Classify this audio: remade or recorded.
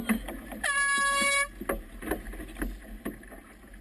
recorded